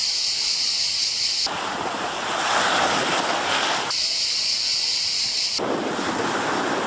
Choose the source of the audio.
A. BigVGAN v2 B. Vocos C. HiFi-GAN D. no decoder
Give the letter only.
D